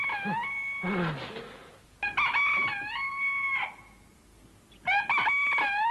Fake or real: real